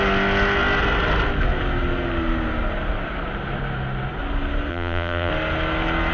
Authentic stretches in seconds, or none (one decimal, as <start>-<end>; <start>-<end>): 0.0-4.7; 5.3-6.1